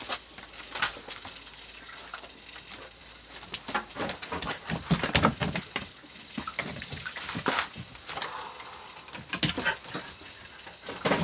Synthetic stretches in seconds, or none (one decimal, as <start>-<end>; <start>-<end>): none